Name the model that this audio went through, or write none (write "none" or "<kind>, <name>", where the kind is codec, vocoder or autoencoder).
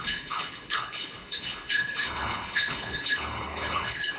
codec, HILCodec